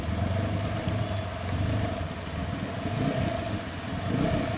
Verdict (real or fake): real